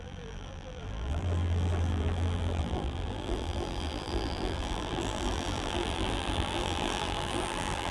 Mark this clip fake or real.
fake